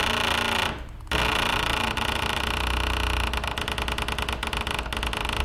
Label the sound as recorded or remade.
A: recorded